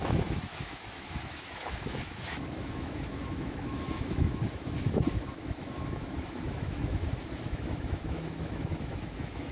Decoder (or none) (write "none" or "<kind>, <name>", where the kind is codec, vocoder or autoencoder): autoencoder, DAC-VAE